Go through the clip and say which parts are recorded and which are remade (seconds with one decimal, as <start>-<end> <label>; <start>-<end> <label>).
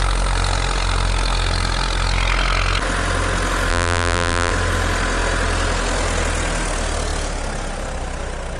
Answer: 0.0-3.7 recorded; 3.7-4.5 remade; 4.5-8.6 recorded